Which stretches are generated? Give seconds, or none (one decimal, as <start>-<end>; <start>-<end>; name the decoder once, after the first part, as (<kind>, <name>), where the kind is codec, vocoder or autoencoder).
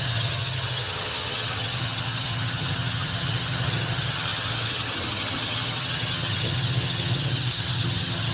0.0-8.3 (vocoder, HiFi-GAN)